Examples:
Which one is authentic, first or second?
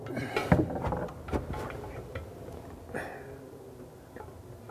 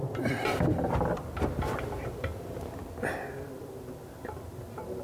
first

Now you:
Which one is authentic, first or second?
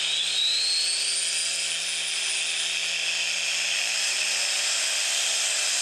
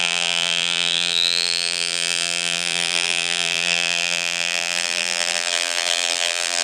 first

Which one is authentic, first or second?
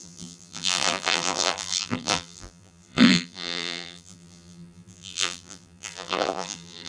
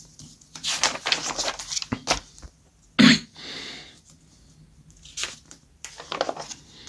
second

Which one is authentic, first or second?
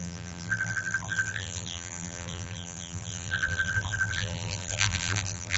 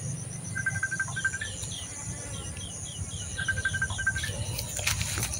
second